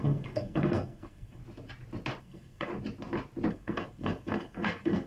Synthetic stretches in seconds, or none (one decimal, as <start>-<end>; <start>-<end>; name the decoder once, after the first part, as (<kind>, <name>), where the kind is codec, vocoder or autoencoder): 0.0-1.4 (codec, SNAC); 2.2-2.7; 3.5-5.1